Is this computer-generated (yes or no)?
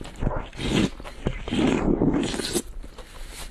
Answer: no